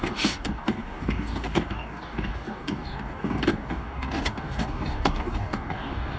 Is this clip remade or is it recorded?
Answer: remade